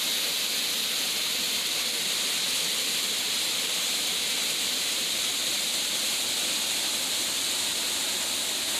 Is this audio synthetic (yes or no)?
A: no